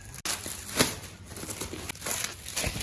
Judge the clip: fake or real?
real